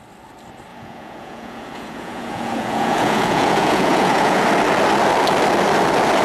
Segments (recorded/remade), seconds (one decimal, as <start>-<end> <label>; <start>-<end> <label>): 0.0-0.7 recorded; 0.7-4.4 remade; 4.4-6.2 recorded